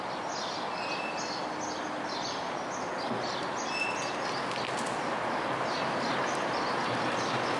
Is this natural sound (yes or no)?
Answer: yes